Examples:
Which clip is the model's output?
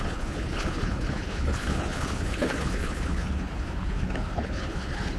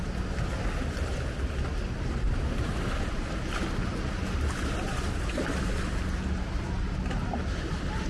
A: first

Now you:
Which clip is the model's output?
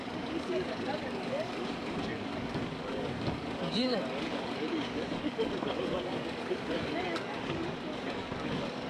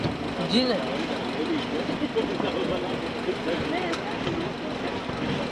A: first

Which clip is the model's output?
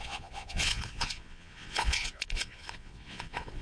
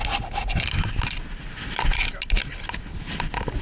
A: first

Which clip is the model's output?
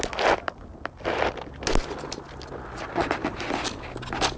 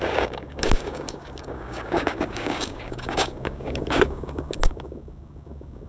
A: second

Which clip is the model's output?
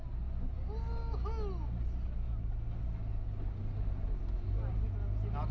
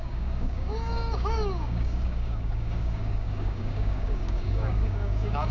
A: second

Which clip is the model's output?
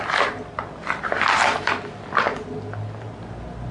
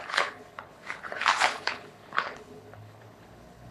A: second